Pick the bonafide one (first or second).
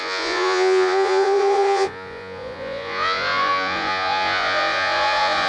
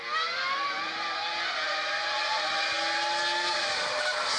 second